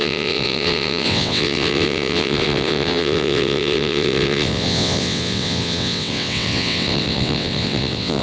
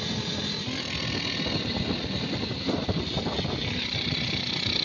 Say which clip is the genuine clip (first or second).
second